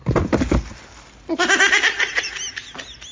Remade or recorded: recorded